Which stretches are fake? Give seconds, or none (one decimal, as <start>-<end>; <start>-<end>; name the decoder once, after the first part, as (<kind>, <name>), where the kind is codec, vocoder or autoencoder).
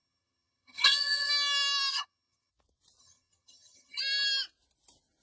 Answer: 0.0-1.3 (vocoder, HiFi-GAN); 1.9-2.5; 3.0-4.0